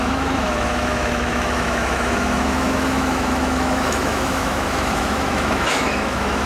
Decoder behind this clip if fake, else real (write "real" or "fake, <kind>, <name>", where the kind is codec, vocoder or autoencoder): fake, autoencoder, DAC-VAE